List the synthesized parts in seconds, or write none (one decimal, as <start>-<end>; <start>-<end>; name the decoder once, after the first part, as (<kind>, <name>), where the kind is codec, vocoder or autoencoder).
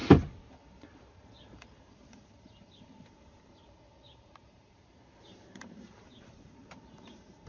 0.5-7.5 (vocoder, BigVGAN v2)